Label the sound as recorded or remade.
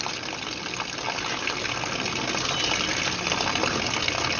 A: recorded